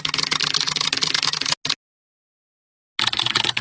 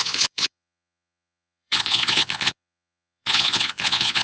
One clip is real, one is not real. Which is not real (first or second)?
second